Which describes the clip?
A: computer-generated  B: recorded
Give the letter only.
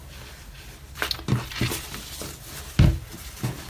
B